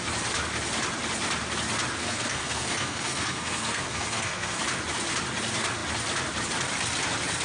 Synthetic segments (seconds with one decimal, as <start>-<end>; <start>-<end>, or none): 2.0-4.6